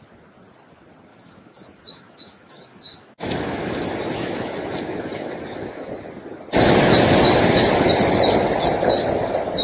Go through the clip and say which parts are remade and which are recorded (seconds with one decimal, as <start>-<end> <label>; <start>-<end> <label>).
0.0-1.1 recorded; 1.1-5.9 remade; 5.9-9.6 recorded